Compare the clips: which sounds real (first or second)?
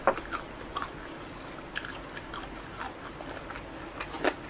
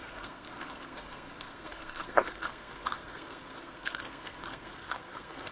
first